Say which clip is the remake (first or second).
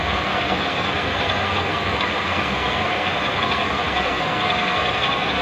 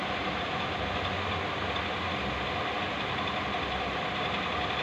first